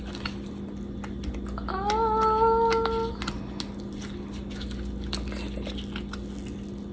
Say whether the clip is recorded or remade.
recorded